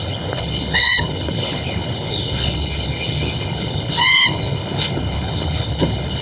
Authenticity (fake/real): fake